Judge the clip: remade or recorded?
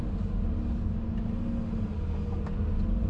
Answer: recorded